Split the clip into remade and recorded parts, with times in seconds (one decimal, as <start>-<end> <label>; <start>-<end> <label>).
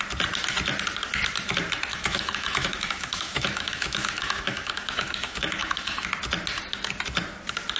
0.0-1.9 recorded; 1.9-6.1 remade; 6.1-7.8 recorded